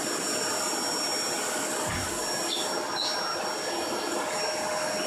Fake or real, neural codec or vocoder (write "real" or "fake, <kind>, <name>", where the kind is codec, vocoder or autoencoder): real